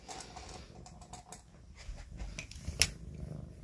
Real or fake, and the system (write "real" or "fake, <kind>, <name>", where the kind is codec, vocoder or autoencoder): real